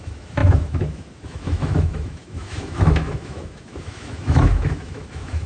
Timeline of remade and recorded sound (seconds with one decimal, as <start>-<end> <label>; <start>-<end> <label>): 0.0-5.5 remade